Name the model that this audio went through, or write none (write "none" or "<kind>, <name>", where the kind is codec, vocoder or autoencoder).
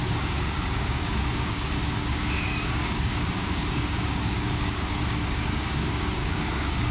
codec, DAC